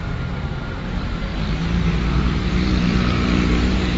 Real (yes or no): no